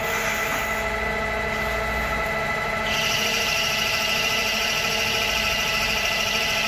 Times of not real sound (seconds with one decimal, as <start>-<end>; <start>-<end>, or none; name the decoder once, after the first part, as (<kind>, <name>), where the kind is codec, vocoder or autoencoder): 2.5-6.7 (vocoder, BigVGAN v2)

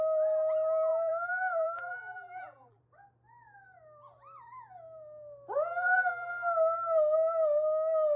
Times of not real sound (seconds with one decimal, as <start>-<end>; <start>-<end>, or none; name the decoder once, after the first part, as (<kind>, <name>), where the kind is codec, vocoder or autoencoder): 0.9-2.8 (vocoder, BigVGAN v2); 5.7-6.3

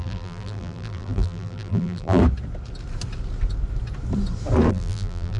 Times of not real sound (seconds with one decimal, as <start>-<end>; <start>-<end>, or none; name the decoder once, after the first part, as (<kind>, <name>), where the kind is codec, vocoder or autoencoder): 0.0-2.2 (vocoder, BigVGAN v2); 4.7-5.4

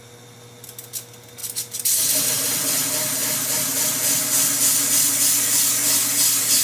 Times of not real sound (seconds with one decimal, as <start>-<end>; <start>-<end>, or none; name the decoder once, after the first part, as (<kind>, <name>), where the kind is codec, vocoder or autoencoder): none

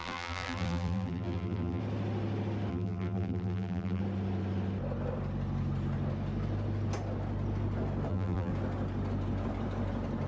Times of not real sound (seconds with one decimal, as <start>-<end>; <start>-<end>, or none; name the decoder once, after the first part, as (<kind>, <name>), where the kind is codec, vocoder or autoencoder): 0.0-1.8 (vocoder, BigVGAN v2); 2.7-4.0; 8.1-8.5

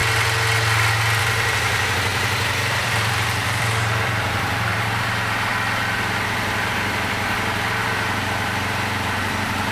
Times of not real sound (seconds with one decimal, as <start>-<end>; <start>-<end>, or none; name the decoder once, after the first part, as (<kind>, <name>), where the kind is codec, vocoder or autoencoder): 1.2-5.5 (vocoder, BigVGAN v2); 6.3-9.7

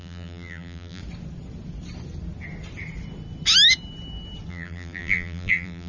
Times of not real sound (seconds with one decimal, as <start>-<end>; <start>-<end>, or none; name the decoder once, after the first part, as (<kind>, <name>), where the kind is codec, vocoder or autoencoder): 0.0-1.0 (vocoder, BigVGAN v2); 4.5-5.9